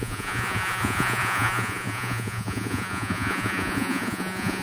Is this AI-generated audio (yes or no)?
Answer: yes